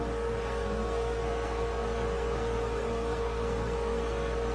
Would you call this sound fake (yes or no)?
yes